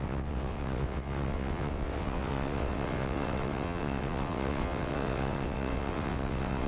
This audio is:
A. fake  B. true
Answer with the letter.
A